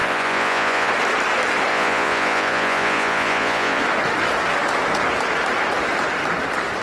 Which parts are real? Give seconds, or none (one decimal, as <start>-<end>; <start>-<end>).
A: 0.9-1.7; 3.8-6.8